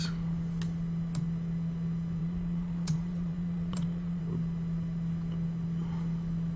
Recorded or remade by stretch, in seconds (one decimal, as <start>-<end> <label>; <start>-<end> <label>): 0.0-2.2 recorded; 2.2-4.2 remade; 4.2-6.6 recorded